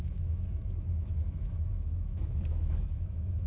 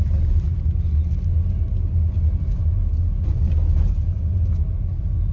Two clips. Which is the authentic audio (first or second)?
second